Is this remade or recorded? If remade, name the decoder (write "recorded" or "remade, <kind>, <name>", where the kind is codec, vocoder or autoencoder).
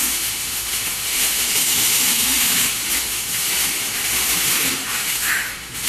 remade, autoencoder, DAC-VAE